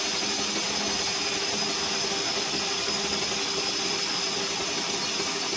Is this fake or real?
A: real